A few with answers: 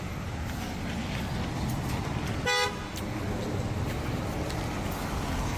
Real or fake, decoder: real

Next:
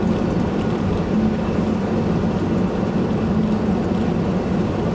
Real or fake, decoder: real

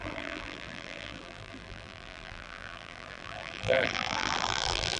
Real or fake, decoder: fake, vocoder, BigVGAN v2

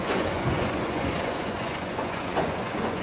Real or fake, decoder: fake, vocoder, Vocos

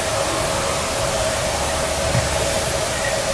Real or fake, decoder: real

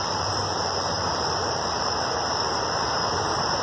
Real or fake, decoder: fake, vocoder, BigVGAN v2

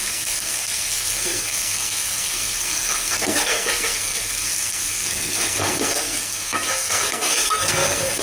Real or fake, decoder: fake, codec, SNAC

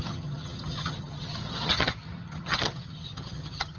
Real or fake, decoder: fake, vocoder, HiFi-GAN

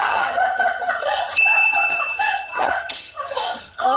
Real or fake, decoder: fake, vocoder, HiFi-GAN